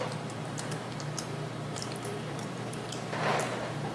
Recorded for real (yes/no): no